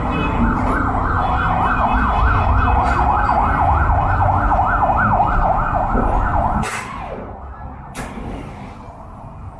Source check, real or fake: real